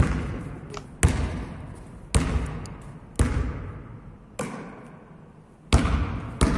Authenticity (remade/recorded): recorded